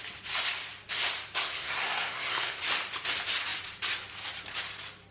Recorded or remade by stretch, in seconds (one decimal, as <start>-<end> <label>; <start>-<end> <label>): 0.0-1.4 recorded; 1.4-2.6 remade; 2.6-5.1 recorded

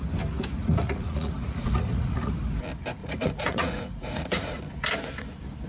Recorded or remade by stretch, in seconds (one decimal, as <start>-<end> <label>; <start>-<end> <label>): 0.0-0.6 recorded; 0.6-2.3 remade; 2.3-3.0 recorded; 3.0-4.6 remade; 4.6-5.7 recorded

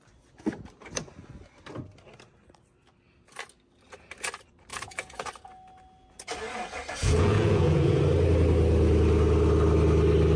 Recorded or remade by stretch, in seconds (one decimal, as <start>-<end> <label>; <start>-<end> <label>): 0.0-4.7 recorded; 4.7-5.3 remade; 5.3-7.0 recorded; 7.0-8.0 remade; 8.0-10.4 recorded

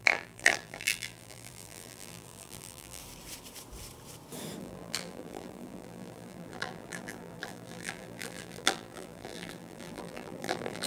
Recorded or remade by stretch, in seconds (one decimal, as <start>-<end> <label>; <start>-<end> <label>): 0.0-3.0 remade; 3.0-4.6 recorded; 4.6-10.9 remade